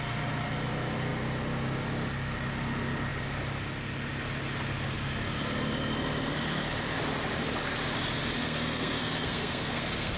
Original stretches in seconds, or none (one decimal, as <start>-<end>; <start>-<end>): 0.0-8.4